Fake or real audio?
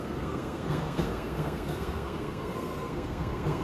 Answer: fake